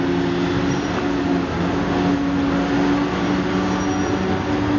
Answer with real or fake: real